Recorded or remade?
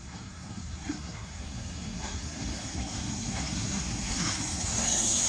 remade